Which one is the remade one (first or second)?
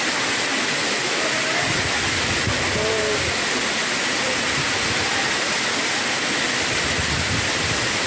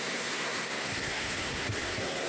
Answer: second